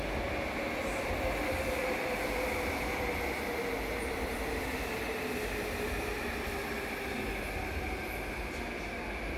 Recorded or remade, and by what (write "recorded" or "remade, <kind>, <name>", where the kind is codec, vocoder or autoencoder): recorded